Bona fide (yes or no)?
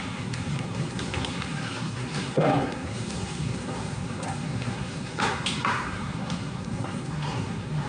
no